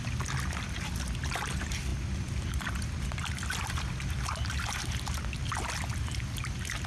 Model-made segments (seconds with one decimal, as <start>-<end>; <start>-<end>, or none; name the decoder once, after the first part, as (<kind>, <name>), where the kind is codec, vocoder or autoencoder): none